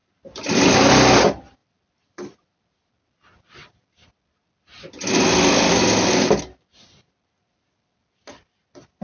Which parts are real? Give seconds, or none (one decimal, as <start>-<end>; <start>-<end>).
0.0-9.0